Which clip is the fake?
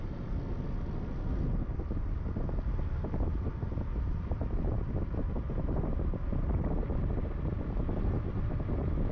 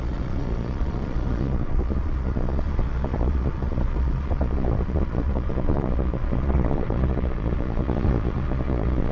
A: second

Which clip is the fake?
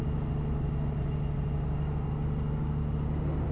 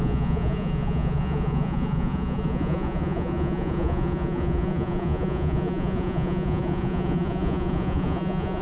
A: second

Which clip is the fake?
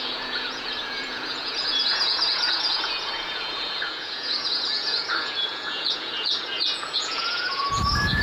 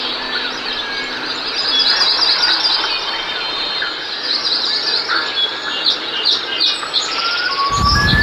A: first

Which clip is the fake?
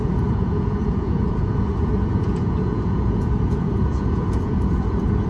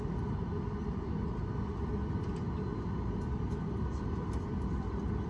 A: first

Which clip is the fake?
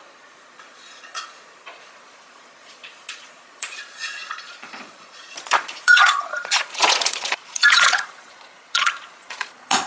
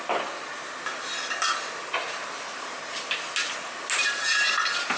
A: first